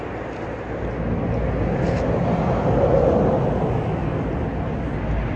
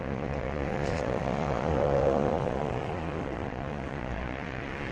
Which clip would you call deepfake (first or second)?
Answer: second